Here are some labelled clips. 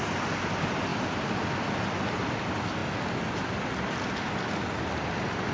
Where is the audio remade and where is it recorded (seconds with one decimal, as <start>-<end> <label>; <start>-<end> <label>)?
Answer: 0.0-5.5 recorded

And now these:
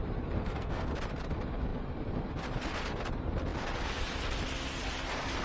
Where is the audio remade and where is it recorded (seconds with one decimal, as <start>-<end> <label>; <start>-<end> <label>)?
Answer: 0.0-0.4 recorded; 0.4-0.9 remade; 0.9-5.4 recorded

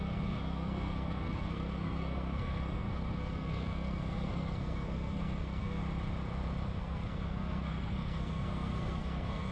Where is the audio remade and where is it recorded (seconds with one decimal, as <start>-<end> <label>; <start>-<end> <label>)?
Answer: 0.0-5.8 remade; 5.8-6.8 recorded; 6.8-9.5 remade